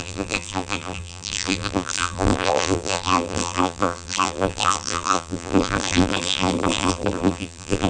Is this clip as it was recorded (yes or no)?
no